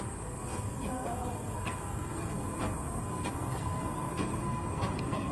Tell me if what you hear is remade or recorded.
remade